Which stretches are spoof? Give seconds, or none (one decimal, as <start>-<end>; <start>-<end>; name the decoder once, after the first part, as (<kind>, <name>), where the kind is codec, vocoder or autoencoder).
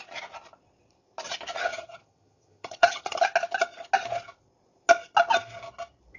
1.7-3.2 (vocoder, HiFi-GAN)